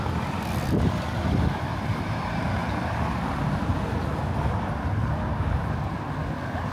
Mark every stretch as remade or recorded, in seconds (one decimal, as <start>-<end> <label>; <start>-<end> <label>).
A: 0.0-1.7 recorded; 1.7-2.5 remade; 2.5-6.7 recorded